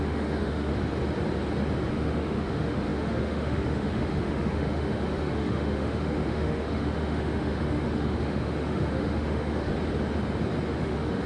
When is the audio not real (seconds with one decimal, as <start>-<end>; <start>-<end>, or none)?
0.0-0.7; 1.9-9.7; 10.8-11.3